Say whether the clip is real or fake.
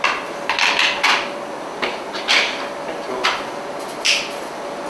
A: real